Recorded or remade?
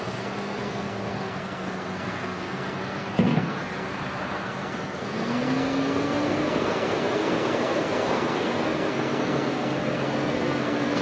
remade